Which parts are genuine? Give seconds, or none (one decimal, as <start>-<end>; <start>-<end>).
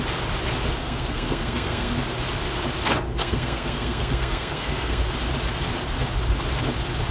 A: 0.0-0.8; 1.9-3.2; 5.0-7.1